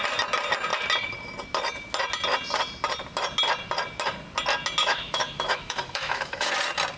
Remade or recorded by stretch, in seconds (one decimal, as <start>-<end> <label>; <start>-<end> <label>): 0.0-4.8 recorded; 4.8-6.5 remade; 6.5-7.0 recorded